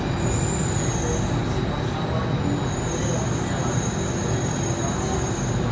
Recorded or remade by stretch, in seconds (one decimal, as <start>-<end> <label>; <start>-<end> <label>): 0.0-5.7 recorded